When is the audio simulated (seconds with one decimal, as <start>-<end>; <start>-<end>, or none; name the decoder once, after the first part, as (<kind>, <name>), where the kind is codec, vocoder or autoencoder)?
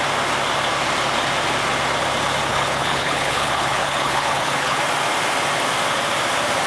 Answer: 2.5-4.8 (codec, HILCodec)